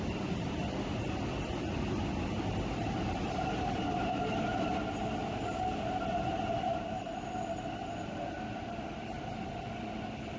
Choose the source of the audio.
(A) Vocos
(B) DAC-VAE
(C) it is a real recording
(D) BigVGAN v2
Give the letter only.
C